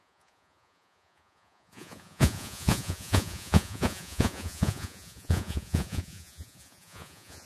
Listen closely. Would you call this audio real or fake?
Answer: fake